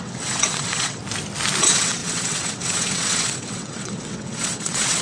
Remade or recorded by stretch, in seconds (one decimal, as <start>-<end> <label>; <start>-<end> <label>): 0.0-1.0 remade; 1.0-1.6 recorded; 1.6-5.0 remade